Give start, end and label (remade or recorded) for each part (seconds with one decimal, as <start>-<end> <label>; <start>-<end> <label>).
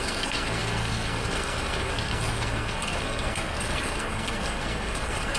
0.0-5.4 remade